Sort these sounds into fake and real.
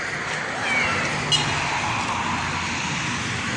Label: real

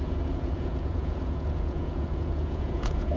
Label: fake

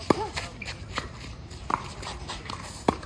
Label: fake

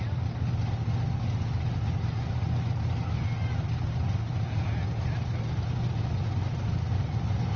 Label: real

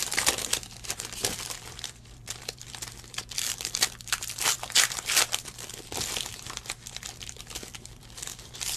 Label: fake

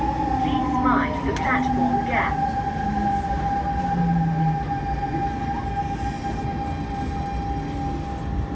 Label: real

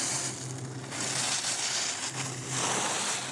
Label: real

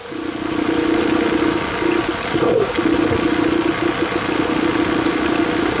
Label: real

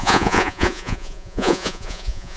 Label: fake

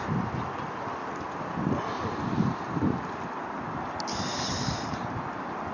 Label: real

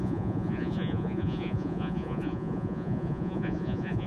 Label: fake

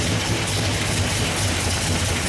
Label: real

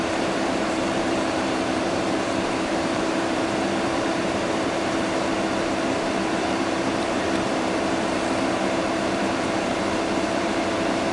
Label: fake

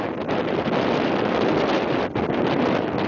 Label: real